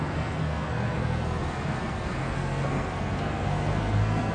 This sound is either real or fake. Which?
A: fake